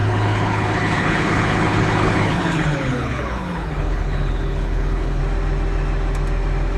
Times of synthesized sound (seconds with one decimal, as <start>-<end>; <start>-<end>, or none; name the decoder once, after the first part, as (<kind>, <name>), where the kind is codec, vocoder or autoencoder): 0.0-5.2 (codec, HILCodec)